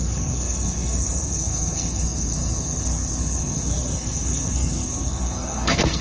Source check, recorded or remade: remade